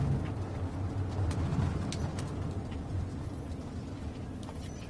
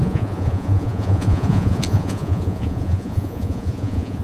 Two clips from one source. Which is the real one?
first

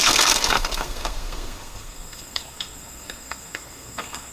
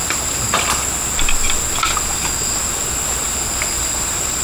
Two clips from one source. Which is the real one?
second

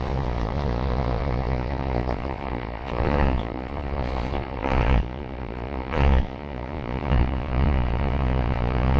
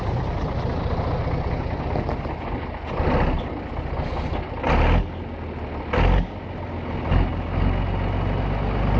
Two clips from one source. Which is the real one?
second